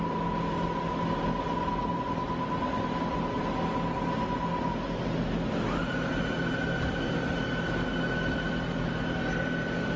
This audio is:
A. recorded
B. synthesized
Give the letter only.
A